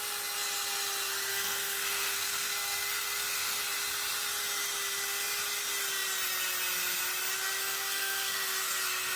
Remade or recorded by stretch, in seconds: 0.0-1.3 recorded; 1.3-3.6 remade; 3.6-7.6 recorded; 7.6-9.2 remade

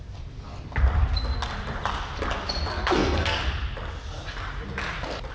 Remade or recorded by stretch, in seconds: 0.0-2.7 recorded; 2.7-3.4 remade; 3.4-5.3 recorded